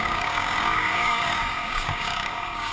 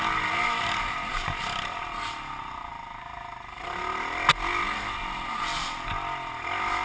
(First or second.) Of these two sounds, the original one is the second